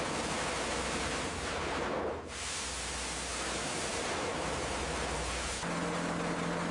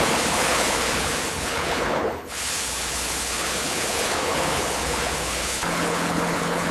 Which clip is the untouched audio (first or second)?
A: first